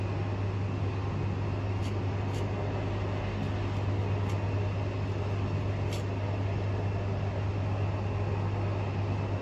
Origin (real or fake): real